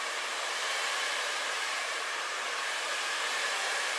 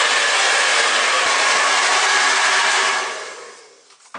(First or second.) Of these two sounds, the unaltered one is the second